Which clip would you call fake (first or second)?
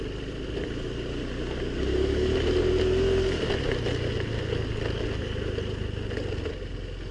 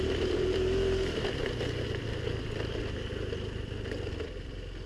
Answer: second